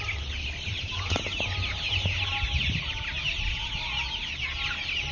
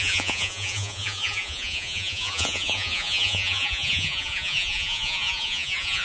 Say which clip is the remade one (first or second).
second